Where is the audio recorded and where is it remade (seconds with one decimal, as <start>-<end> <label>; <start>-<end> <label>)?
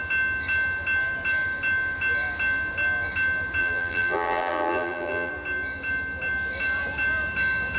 0.0-3.6 recorded; 3.6-5.3 remade; 5.3-7.8 recorded